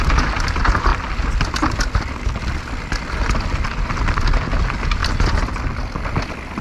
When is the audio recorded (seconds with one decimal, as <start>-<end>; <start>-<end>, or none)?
0.0-6.6